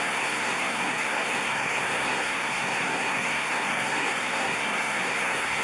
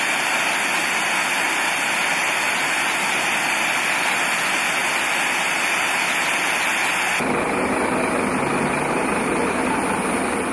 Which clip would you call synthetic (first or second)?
first